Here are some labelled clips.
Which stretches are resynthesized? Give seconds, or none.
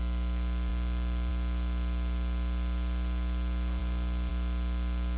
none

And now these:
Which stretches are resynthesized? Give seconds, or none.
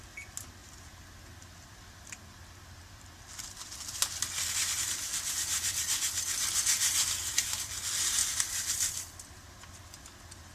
none